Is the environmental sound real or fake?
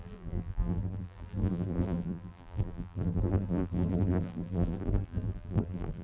fake